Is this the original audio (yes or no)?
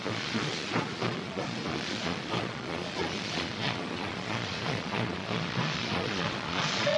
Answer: no